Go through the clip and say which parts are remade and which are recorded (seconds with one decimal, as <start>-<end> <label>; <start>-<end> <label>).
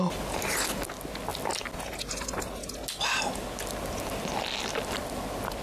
0.0-5.6 recorded